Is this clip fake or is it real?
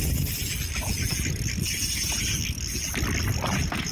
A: real